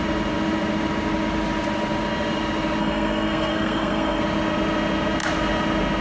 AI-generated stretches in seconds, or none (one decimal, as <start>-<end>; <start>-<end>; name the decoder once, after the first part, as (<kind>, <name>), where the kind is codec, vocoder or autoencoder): 2.8-4.2 (codec, SNAC)